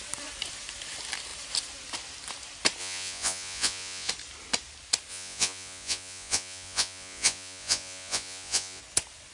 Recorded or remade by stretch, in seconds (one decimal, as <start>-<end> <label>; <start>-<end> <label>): 0.0-2.8 recorded; 2.8-4.1 remade; 4.1-5.1 recorded; 5.1-8.8 remade; 8.8-9.3 recorded